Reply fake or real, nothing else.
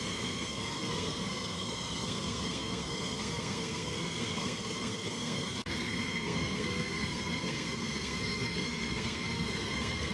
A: fake